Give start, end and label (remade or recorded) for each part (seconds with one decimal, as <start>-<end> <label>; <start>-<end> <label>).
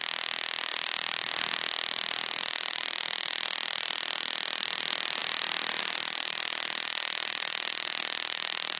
0.0-8.8 recorded